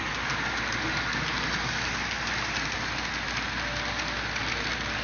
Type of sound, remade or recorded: recorded